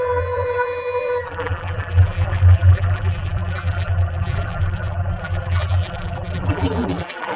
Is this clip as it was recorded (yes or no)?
no